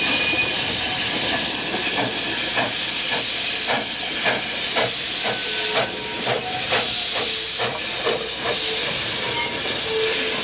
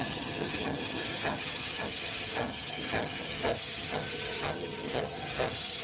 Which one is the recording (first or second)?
first